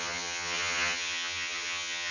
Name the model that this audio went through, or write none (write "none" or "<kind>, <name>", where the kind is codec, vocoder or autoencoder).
vocoder, HiFi-GAN